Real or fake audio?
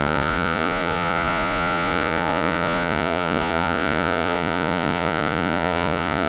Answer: fake